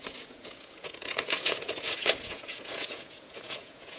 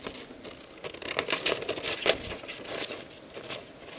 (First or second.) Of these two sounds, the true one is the second